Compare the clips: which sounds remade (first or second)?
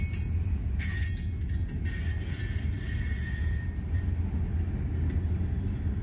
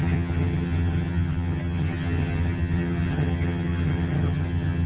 second